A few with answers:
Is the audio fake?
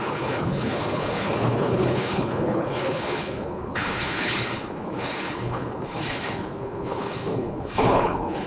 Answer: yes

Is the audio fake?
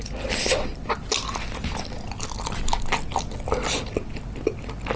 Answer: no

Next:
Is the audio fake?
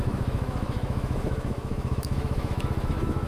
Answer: yes